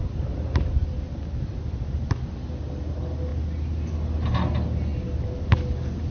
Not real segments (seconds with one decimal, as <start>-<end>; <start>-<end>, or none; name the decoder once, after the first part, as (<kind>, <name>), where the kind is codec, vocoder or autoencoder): none